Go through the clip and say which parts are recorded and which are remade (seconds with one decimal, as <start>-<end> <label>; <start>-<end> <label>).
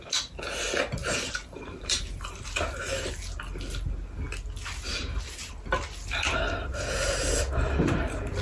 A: 0.0-1.0 recorded; 1.0-2.0 remade; 2.0-4.9 recorded; 4.9-5.5 remade; 5.5-8.4 recorded